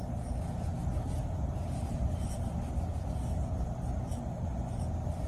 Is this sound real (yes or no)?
yes